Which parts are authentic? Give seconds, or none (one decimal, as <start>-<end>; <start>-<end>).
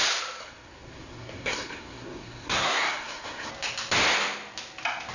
0.0-0.4; 3.5-5.1